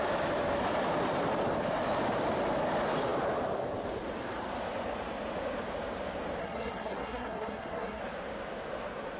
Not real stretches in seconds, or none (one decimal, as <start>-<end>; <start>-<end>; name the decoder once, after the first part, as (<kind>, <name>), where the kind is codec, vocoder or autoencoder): 6.4-8.0 (codec, SNAC)